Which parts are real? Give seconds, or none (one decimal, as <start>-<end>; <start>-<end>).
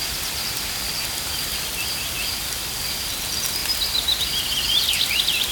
none